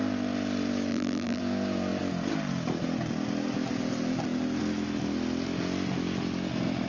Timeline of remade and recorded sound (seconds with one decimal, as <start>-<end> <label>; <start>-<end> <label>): 0.0-0.9 recorded; 0.9-1.4 remade; 1.4-6.9 recorded